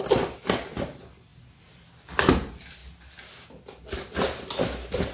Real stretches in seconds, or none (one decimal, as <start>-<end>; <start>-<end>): 0.0-5.1